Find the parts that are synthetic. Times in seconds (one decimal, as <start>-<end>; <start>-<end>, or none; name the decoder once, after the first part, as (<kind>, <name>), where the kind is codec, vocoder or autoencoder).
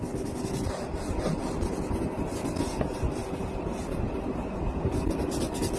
none